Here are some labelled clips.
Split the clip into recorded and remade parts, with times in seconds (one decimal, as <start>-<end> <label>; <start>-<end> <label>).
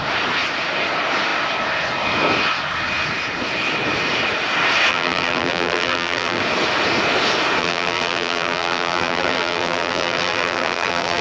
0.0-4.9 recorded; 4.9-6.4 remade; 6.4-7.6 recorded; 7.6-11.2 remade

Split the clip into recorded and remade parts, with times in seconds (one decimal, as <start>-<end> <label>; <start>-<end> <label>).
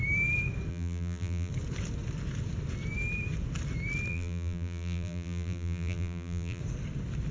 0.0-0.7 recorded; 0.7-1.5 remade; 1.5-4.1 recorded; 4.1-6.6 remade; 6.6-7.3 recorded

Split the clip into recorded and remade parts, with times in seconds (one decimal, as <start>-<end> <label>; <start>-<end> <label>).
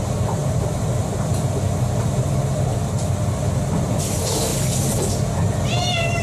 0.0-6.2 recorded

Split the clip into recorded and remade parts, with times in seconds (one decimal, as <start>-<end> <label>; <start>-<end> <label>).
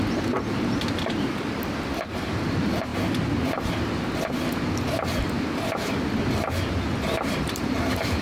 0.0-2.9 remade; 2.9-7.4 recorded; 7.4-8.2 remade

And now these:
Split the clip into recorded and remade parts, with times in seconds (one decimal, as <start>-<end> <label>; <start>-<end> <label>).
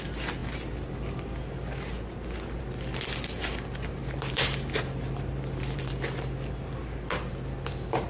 0.0-4.0 recorded; 4.0-5.9 remade; 5.9-8.1 recorded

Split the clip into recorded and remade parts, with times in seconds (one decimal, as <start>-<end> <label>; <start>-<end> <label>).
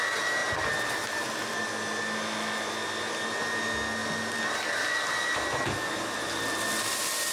0.0-7.3 recorded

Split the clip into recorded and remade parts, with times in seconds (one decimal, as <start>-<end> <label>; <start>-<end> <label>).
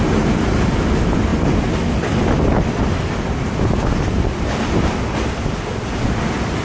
0.0-6.6 recorded